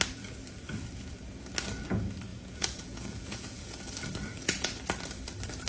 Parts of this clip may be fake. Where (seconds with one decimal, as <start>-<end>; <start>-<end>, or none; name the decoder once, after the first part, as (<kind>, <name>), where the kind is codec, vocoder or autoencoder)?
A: 2.3-3.9 (vocoder, Vocos); 4.3-4.8